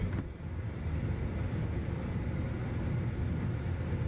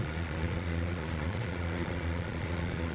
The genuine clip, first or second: first